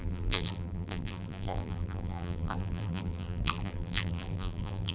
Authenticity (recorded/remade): remade